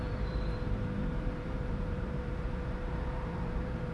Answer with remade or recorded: remade